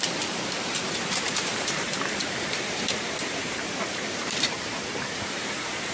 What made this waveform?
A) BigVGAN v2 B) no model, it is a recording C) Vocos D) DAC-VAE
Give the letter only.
A